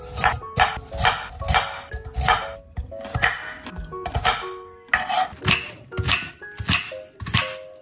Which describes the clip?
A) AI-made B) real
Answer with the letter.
B